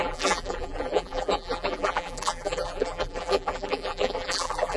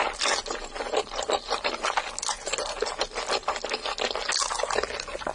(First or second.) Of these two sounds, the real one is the second